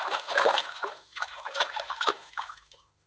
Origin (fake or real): fake